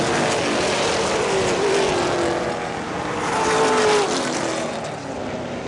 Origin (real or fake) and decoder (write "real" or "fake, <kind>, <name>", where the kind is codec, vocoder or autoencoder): real